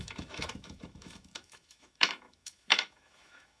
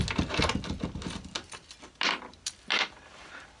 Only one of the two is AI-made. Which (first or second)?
first